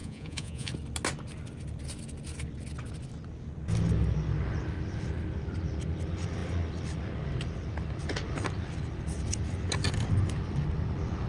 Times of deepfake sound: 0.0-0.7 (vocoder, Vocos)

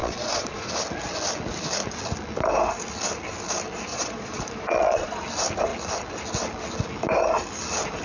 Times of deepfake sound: 0.0-0.7 (vocoder, Vocos); 3.9-5.2

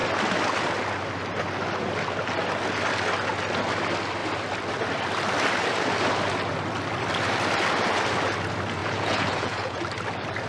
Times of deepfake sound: 8.8-9.8 (vocoder, Vocos)

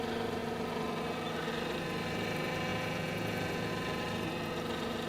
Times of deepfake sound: 2.7-3.7 (vocoder, Vocos)

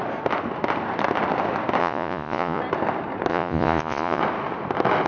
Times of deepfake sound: 1.8-2.6 (vocoder, Vocos); 3.3-4.2

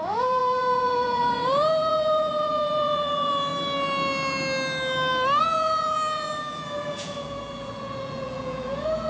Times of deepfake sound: 0.0-3.5 (vocoder, Vocos); 5.4-9.1

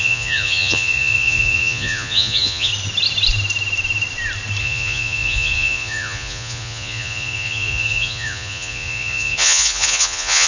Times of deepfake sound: 0.0-2.7 (vocoder, Vocos); 4.6-10.5